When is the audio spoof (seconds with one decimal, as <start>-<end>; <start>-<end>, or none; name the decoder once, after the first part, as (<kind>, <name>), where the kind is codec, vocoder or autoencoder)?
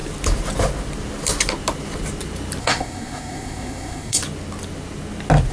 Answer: 2.6-4.2 (codec, SNAC)